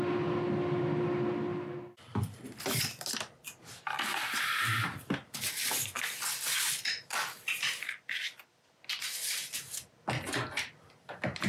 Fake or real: real